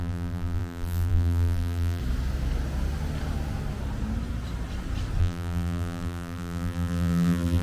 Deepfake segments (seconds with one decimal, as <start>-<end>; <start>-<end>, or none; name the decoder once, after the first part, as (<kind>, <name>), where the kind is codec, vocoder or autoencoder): 0.0-2.0 (vocoder, BigVGAN v2); 5.2-7.6